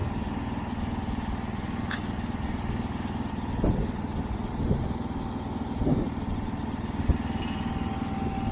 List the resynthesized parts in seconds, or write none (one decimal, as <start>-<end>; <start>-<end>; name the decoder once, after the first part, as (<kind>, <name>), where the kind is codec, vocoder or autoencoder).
none